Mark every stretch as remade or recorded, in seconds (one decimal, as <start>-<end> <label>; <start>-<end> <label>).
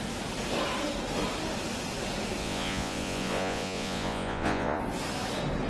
0.0-2.4 recorded; 2.4-4.8 remade; 4.8-5.7 recorded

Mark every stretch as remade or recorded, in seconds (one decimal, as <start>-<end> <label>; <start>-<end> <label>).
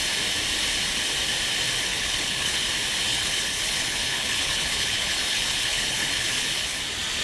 0.0-1.9 recorded; 1.9-2.7 remade; 2.7-3.1 recorded; 3.1-6.8 remade; 6.8-7.2 recorded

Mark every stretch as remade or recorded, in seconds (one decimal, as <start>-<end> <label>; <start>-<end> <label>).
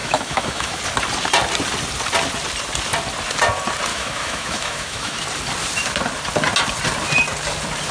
0.0-0.8 remade; 0.8-3.9 recorded; 3.9-5.2 remade; 5.2-7.9 recorded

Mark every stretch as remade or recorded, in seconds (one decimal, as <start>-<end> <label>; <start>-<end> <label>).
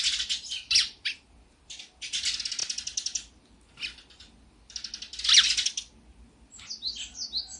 0.0-7.6 recorded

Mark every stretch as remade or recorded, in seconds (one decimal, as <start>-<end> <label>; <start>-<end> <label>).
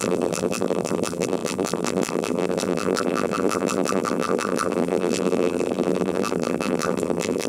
0.0-7.5 remade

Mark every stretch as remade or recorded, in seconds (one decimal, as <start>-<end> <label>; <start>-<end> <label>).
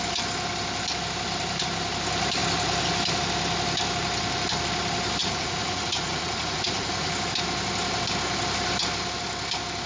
0.0-5.2 recorded; 5.2-7.1 remade; 7.1-9.9 recorded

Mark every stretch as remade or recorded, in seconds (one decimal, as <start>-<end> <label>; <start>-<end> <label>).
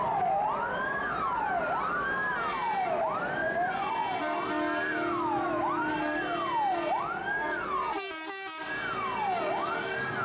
0.0-3.4 recorded; 3.4-3.9 remade; 3.9-10.2 recorded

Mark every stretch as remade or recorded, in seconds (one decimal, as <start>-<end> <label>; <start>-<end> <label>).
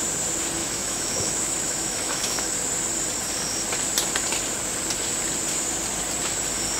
0.0-0.6 recorded; 0.6-2.5 remade; 2.5-6.8 recorded